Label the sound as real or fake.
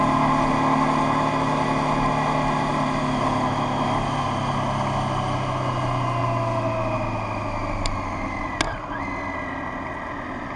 real